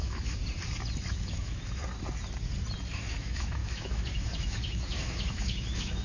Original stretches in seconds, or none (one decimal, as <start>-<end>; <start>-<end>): 0.4-1.1; 1.8-2.9